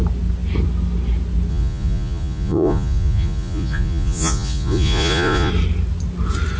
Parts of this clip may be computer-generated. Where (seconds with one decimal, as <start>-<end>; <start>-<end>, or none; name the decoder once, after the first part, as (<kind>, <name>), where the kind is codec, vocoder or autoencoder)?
1.5-5.5 (vocoder, Vocos)